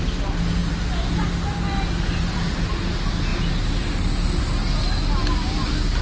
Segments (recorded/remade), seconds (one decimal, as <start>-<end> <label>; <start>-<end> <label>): 0.0-6.0 recorded